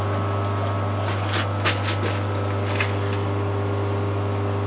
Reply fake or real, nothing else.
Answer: real